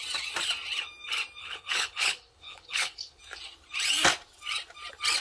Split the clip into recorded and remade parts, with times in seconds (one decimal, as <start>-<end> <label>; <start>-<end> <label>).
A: 0.0-1.4 recorded; 1.4-3.2 remade; 3.2-5.2 recorded